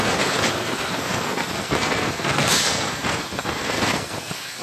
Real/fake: fake